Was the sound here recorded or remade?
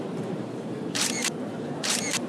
remade